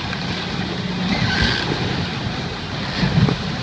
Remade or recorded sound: recorded